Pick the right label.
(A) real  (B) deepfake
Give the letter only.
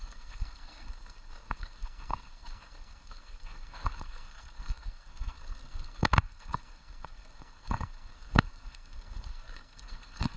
B